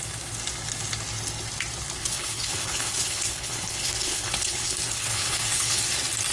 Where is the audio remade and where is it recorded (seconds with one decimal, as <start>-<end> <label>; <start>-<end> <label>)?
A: 0.0-2.0 recorded; 2.0-5.8 remade; 5.8-6.3 recorded